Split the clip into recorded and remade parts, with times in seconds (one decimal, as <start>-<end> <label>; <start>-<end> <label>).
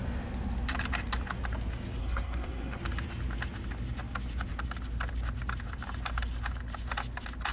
0.0-2.0 recorded; 2.0-2.8 remade; 2.8-7.5 recorded